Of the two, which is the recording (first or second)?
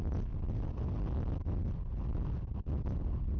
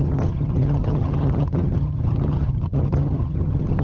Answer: first